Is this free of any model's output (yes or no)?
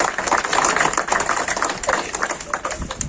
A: yes